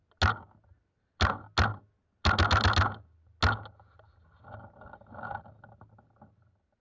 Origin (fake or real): real